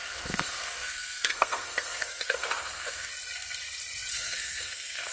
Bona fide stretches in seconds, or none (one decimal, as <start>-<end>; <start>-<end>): 3.1-4.1